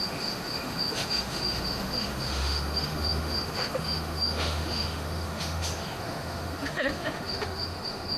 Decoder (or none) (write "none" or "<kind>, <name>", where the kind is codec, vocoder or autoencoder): autoencoder, DAC-VAE